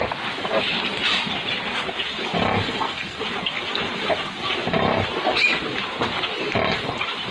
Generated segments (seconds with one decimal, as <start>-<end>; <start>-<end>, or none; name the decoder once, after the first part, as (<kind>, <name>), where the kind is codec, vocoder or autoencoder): 2.6-3.2 (codec, SNAC)

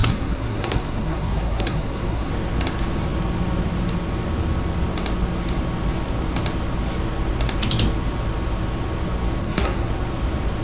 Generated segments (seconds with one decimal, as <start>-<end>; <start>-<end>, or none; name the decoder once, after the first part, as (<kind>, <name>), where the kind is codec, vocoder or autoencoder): 0.0-2.3 (codec, SNAC); 9.4-9.9